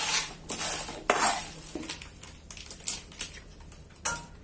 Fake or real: real